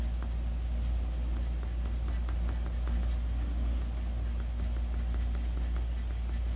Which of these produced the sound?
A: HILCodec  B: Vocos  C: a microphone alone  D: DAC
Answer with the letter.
C